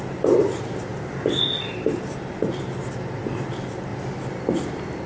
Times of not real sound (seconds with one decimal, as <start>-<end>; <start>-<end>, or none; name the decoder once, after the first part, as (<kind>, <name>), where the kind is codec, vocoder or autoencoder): none